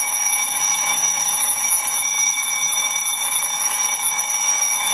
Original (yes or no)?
no